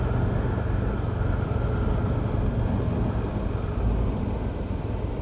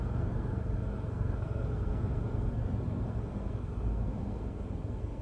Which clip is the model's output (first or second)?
second